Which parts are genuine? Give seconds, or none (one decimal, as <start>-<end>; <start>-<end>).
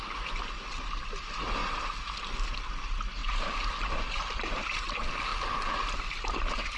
0.0-6.8